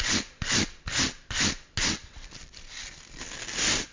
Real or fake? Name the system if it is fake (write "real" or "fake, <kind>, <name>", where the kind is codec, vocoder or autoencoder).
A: real